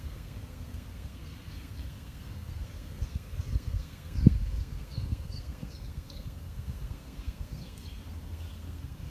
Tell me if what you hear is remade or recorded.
remade